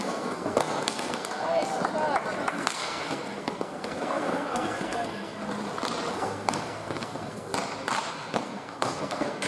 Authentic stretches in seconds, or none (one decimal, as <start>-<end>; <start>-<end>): 1.6-2.5; 5.4-6.1; 7.5-8.1